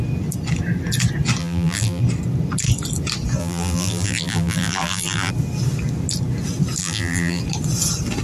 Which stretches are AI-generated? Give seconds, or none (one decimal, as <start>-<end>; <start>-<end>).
1.4-2.0; 3.4-5.3; 6.8-7.4